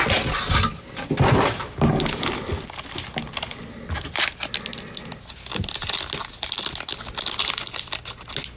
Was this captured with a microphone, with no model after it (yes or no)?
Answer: yes